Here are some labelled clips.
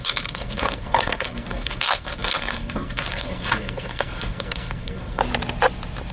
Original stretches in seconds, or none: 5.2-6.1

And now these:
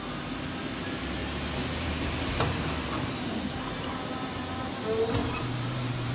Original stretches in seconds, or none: 0.0-1.2; 4.8-5.2

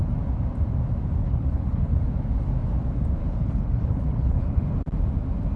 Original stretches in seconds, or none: 0.0-1.2; 1.9-3.2; 4.6-5.6

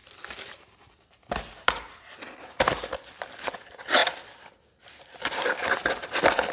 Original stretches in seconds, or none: 0.0-2.0

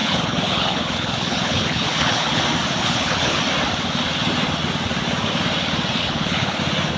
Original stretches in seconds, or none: 2.4-2.8; 3.4-6.0; 6.6-7.0

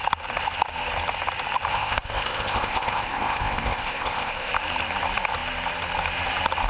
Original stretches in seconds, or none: 0.0-1.7; 4.5-6.7